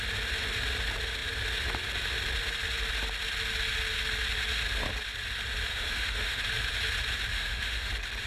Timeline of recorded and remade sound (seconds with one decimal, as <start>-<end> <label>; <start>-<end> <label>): 0.0-5.7 recorded; 5.7-6.4 remade; 6.4-7.3 recorded; 7.3-7.9 remade; 7.9-8.3 recorded